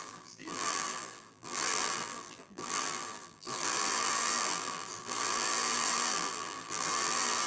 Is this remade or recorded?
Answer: remade